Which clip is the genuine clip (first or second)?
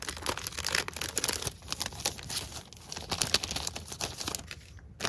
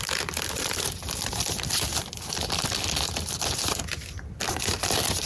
first